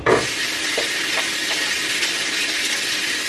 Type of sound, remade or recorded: recorded